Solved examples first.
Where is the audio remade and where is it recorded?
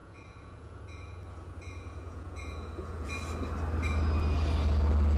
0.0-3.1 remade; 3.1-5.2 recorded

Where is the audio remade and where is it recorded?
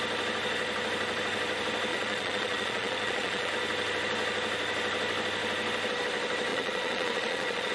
0.0-1.9 recorded; 1.9-3.5 remade; 3.5-6.5 recorded; 6.5-7.7 remade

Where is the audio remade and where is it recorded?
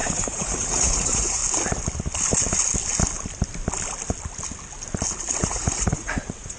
0.0-1.4 remade; 1.4-5.4 recorded; 5.4-6.6 remade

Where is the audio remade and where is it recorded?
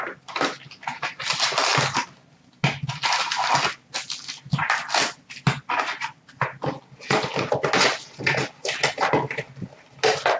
0.0-10.4 recorded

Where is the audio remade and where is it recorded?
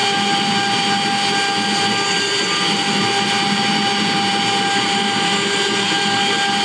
0.0-6.6 recorded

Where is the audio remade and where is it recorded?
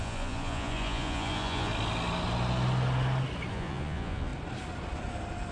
0.0-1.7 remade; 1.7-3.5 recorded; 3.5-4.3 remade; 4.3-5.5 recorded